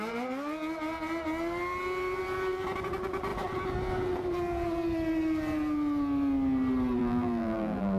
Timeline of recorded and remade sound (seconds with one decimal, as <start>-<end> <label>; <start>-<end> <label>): 0.0-7.0 recorded; 7.0-8.0 remade